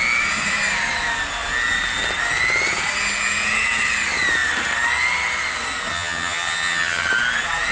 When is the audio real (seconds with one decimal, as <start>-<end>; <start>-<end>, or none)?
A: 0.0-5.9; 7.1-7.7